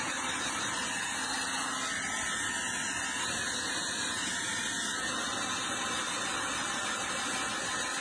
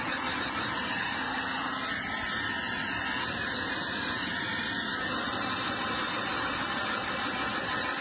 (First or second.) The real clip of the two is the first